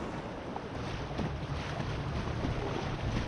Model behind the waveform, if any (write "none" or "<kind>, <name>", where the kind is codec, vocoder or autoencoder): vocoder, BigVGAN v2